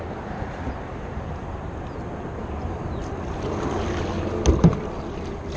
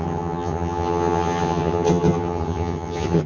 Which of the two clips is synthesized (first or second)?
second